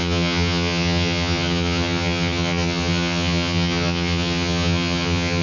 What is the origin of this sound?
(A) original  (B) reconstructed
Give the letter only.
B